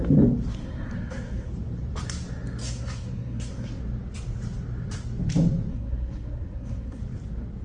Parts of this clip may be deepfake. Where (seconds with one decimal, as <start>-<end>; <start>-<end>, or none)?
0.5-1.5; 2.6-3.8; 5.7-7.0